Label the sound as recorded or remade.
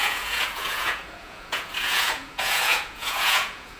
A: remade